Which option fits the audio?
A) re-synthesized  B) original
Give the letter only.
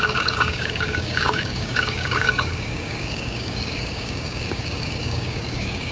A